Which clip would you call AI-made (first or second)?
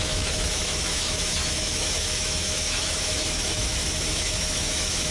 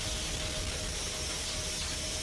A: first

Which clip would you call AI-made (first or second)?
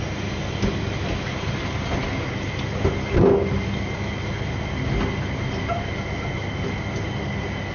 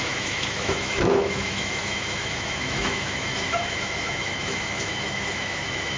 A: second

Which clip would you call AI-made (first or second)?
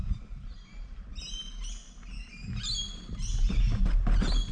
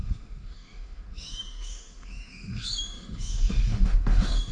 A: second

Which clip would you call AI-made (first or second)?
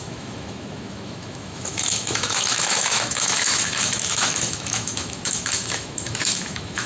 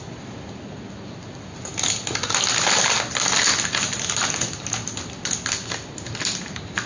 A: first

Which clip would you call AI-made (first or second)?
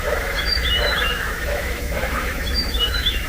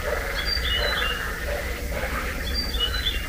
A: first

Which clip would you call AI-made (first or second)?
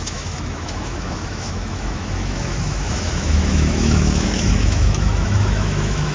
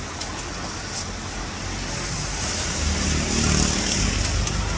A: first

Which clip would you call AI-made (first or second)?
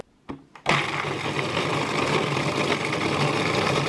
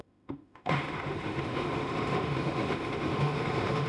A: second